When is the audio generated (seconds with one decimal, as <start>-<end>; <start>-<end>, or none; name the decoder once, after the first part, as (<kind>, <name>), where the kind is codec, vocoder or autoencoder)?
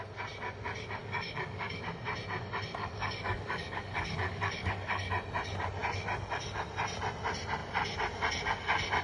1.0-1.8 (codec, DAC); 2.8-5.1